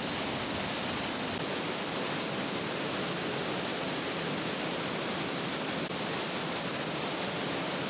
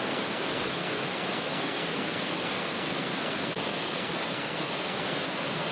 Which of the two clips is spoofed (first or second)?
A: second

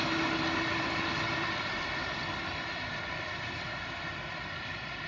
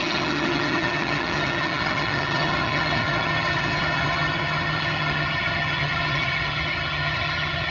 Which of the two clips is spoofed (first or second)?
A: second